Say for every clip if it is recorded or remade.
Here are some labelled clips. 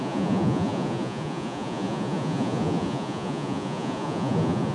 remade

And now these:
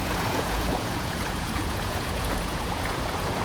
remade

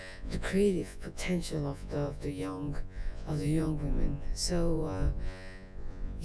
remade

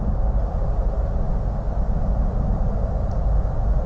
recorded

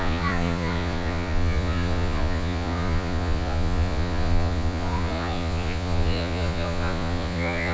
remade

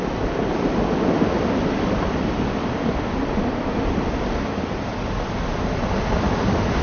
recorded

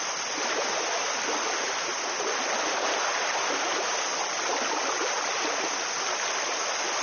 recorded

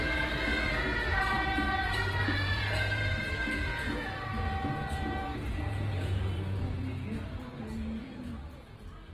remade